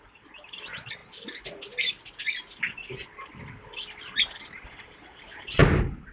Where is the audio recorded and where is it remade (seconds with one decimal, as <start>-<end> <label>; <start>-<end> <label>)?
0.0-1.0 remade; 1.0-4.7 recorded; 4.7-5.6 remade; 5.6-6.1 recorded